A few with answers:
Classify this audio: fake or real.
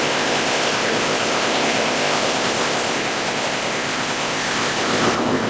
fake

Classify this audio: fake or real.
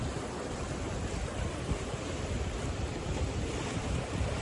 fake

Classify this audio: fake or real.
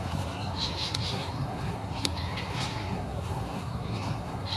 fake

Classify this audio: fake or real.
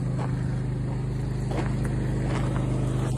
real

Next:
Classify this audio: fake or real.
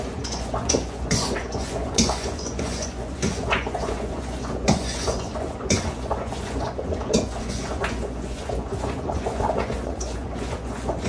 fake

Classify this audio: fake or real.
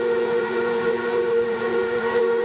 fake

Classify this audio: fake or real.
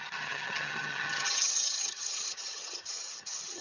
fake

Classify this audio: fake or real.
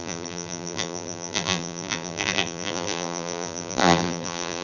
fake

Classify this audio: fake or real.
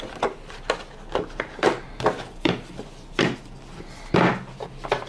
fake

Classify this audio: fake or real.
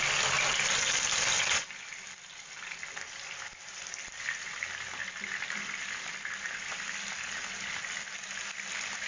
real